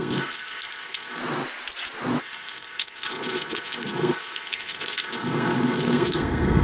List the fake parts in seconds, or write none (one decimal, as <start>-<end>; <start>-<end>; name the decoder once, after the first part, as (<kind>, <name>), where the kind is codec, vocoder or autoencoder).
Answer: 0.0-1.2 (codec, SNAC); 2.2-6.6